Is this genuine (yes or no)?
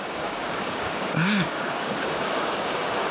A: no